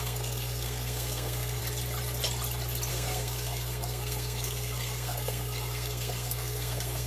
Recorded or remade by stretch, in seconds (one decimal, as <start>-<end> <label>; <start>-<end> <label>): 0.0-1.6 remade; 1.6-2.9 recorded; 2.9-7.1 remade